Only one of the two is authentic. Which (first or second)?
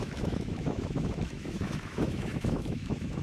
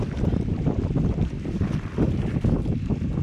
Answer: second